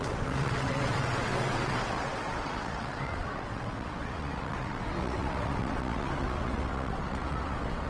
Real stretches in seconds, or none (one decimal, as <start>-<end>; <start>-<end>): none